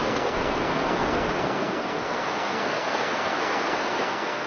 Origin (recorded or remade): remade